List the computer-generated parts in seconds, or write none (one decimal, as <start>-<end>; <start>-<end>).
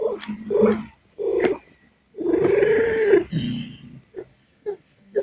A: 4.3-5.2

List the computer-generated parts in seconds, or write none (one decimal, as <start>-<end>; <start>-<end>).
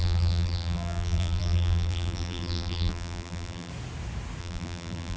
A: 0.0-3.7; 4.4-5.2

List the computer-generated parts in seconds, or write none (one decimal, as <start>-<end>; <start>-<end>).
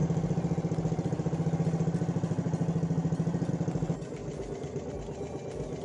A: none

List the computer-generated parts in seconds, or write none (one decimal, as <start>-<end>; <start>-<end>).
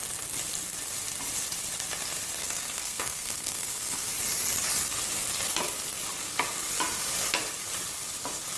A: 2.4-4.1